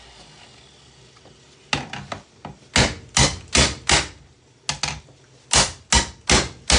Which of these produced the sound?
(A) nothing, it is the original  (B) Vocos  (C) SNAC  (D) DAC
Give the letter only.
A